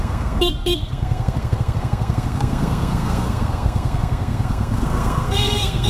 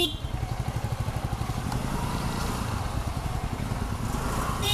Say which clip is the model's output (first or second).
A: first